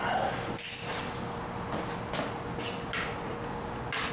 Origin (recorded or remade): recorded